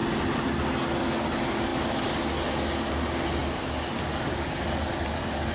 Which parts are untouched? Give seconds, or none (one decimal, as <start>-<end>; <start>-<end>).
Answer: 0.0-5.5